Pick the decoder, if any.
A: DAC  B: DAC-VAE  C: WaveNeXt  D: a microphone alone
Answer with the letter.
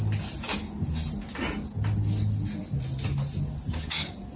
D